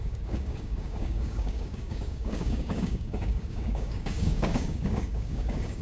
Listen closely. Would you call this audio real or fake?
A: fake